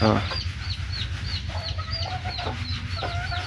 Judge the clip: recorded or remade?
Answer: recorded